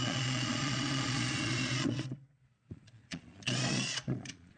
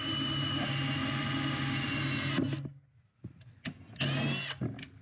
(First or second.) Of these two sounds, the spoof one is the first